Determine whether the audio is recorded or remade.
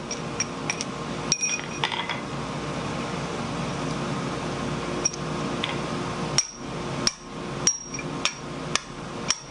recorded